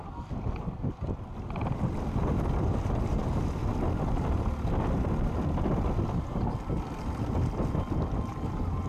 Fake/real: real